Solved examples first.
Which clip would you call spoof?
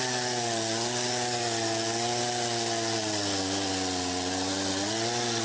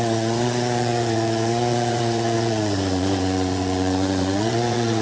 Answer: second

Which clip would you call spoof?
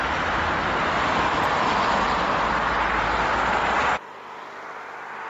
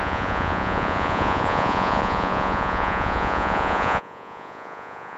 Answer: second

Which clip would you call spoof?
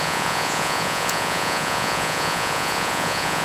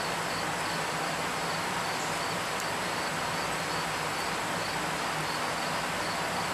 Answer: first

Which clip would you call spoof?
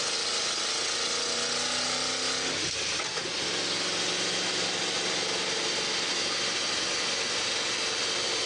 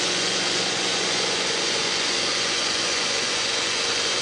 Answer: second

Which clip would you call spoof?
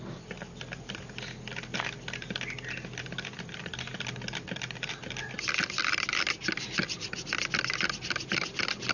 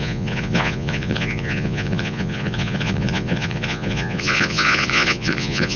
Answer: second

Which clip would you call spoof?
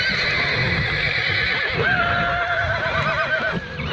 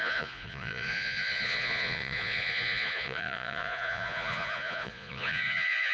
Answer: second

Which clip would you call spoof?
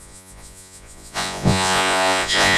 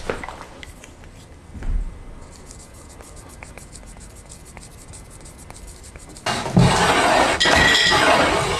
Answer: first